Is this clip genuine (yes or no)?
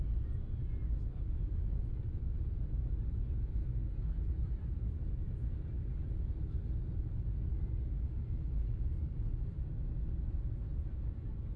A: yes